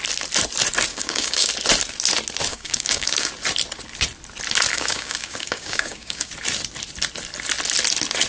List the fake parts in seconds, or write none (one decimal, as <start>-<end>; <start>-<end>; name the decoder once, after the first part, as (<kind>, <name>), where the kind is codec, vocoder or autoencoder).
0.9-1.5 (codec, DAC); 2.5-3.3; 4.7-6.3